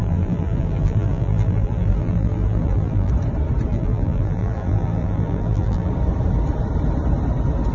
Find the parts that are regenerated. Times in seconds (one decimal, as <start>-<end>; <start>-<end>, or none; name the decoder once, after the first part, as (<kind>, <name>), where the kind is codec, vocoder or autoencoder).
0.0-3.1 (vocoder, BigVGAN v2); 3.7-5.9